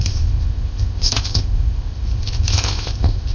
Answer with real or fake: fake